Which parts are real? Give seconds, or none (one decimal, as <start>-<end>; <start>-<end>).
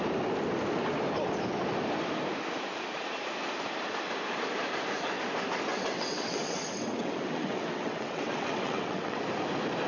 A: 0.0-5.7; 9.2-9.9